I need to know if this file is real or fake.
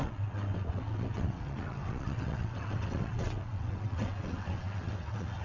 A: fake